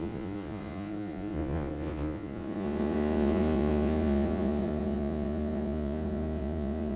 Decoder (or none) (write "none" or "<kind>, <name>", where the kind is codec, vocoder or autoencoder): vocoder, Vocos